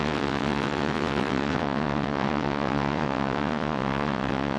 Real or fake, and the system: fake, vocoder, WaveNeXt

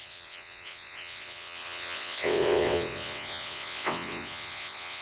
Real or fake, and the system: fake, vocoder, WaveNeXt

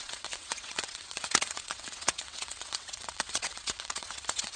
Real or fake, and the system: fake, vocoder, WaveNeXt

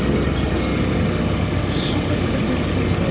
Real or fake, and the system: real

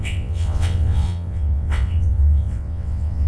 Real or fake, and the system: fake, vocoder, WaveNeXt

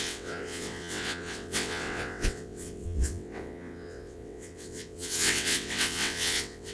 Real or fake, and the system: fake, vocoder, WaveNeXt